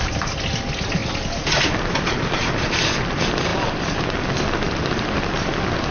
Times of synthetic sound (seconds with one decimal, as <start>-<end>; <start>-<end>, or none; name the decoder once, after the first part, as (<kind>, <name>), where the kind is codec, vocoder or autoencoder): none